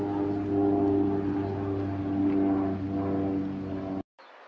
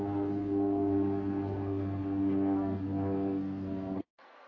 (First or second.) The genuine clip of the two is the first